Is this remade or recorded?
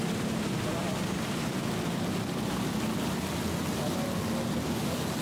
recorded